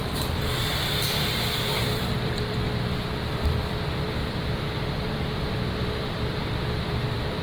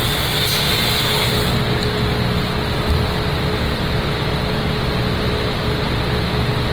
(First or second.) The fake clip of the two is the first